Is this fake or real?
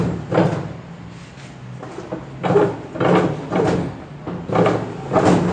real